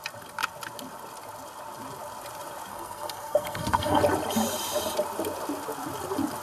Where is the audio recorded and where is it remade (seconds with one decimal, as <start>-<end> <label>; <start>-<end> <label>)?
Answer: 0.0-2.7 recorded; 2.7-4.0 remade; 4.0-6.4 recorded